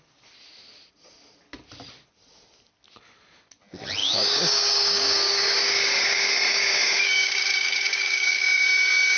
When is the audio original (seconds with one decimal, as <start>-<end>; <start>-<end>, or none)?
0.0-4.0